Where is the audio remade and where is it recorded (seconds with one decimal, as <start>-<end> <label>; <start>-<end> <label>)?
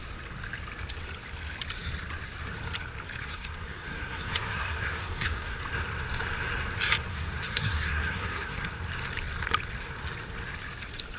0.0-3.2 recorded; 3.2-5.6 remade; 5.6-7.1 recorded; 7.1-8.7 remade; 8.7-11.2 recorded